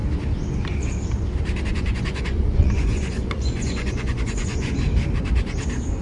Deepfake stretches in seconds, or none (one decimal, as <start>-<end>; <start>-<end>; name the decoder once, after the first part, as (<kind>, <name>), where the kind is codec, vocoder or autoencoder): 1.7-4.8 (vocoder, Vocos)